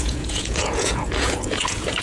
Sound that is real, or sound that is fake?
fake